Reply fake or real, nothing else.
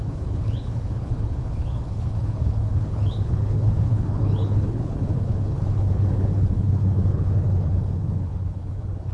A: fake